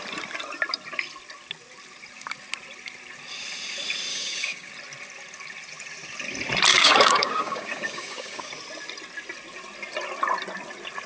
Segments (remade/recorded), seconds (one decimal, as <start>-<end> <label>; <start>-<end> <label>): 0.0-4.1 recorded; 4.1-4.7 remade; 4.7-6.7 recorded; 6.7-8.5 remade; 8.5-11.1 recorded